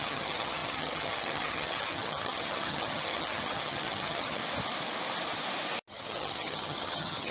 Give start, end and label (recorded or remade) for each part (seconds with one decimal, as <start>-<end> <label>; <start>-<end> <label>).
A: 0.0-4.4 remade; 4.4-5.9 recorded; 5.9-7.3 remade